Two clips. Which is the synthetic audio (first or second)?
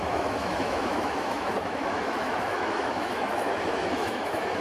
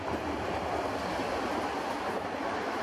first